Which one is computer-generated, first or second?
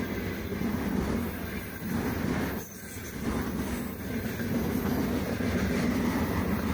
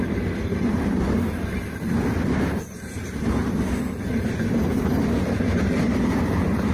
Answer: second